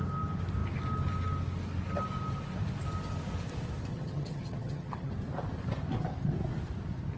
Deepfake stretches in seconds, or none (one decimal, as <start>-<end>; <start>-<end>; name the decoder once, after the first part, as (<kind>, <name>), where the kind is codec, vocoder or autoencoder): 3.9-5.1 (vocoder, HiFi-GAN)